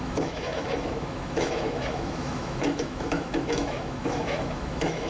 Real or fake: fake